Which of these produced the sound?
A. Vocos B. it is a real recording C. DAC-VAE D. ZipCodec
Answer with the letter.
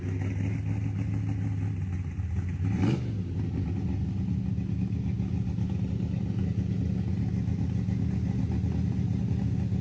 B